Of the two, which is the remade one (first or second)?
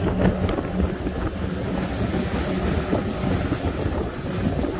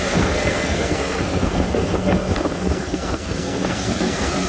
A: second